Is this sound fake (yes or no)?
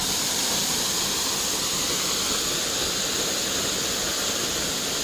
no